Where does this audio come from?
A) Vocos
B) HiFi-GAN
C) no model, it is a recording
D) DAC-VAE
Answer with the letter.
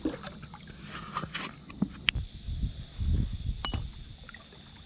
C